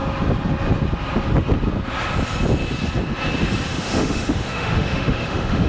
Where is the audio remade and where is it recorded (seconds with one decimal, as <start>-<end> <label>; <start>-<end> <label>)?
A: 0.0-3.7 recorded; 3.7-5.7 remade